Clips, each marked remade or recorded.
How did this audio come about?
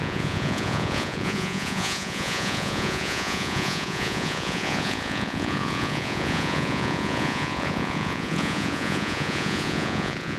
remade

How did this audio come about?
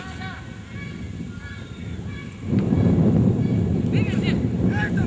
recorded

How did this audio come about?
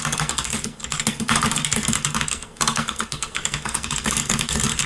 remade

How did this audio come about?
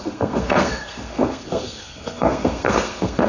remade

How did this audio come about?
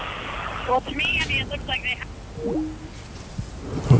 recorded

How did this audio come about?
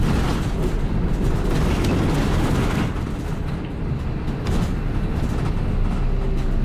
recorded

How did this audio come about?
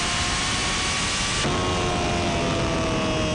recorded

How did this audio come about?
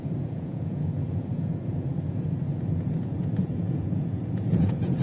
remade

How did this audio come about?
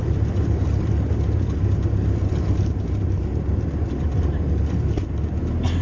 remade